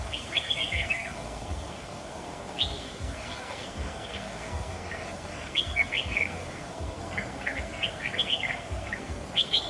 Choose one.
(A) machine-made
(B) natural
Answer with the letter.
A